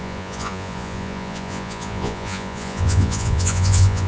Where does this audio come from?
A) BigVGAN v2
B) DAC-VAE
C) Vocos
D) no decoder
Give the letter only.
C